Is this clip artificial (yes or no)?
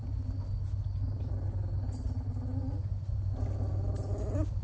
no